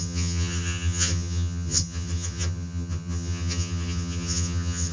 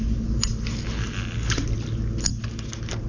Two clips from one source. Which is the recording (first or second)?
second